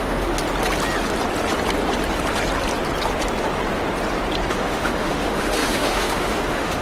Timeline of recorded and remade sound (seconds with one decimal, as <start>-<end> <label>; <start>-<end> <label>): 0.0-0.4 remade; 0.4-4.5 recorded; 4.5-6.8 remade